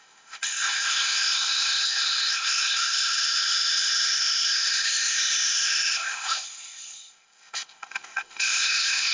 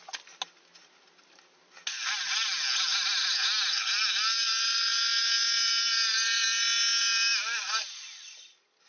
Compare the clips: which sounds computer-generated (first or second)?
first